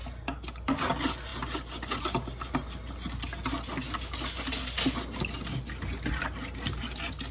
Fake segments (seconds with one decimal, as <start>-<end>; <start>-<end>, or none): none